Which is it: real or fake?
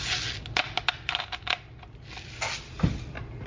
real